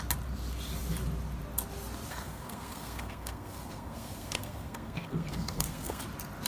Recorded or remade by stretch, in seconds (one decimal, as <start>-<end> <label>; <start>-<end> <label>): 0.0-2.1 recorded; 2.1-6.0 remade; 6.0-6.5 recorded